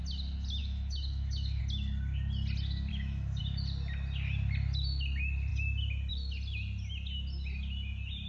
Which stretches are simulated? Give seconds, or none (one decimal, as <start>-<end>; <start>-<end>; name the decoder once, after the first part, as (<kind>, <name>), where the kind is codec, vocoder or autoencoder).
0.6-1.6 (autoencoder, DAC-VAE); 2.9-3.4